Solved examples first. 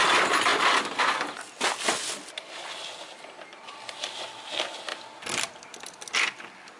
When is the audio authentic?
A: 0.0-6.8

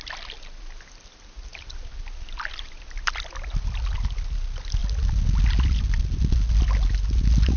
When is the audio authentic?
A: 0.0-7.6

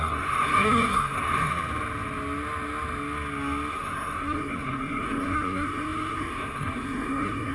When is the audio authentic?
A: 1.5-3.7

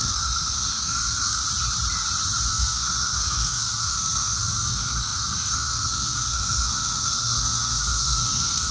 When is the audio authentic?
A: 1.4-2.5

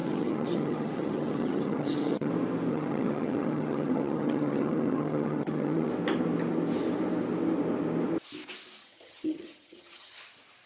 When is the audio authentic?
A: 2.3-2.7; 5.9-8.8; 10.2-10.7